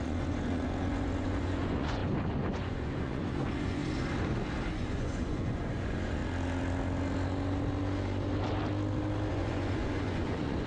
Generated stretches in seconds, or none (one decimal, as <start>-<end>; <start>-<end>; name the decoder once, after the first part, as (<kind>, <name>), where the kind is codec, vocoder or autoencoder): 0.0-3.8 (vocoder, Vocos); 4.7-6.2; 9.3-10.7